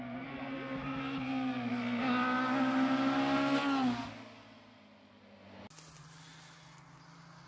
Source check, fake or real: real